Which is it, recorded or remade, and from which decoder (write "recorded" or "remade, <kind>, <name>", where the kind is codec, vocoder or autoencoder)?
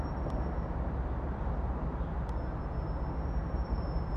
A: recorded